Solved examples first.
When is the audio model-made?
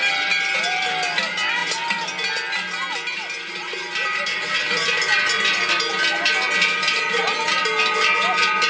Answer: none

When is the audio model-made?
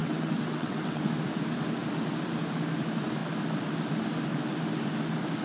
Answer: 0.0-1.0 (vocoder, WaveNeXt)